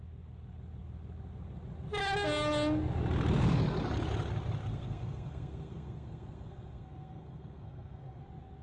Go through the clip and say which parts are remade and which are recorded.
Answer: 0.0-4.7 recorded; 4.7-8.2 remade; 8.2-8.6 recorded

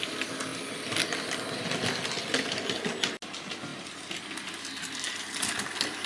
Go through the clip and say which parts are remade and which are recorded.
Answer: 0.0-6.1 recorded

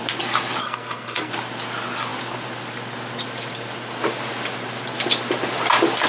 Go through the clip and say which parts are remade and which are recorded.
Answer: 0.0-0.6 recorded; 0.6-1.3 remade; 1.3-6.1 recorded

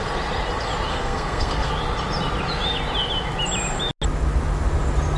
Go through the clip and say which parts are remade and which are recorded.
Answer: 0.0-0.9 recorded; 0.9-1.7 remade; 1.7-5.2 recorded

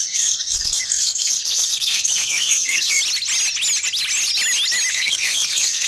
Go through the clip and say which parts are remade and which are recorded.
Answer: 0.0-3.0 remade; 3.0-4.9 recorded; 4.9-5.9 remade

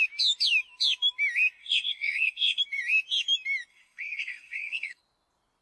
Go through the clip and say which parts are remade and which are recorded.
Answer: 0.0-1.6 recorded; 1.6-2.6 remade; 2.6-3.7 recorded; 3.7-5.0 remade; 5.0-5.6 recorded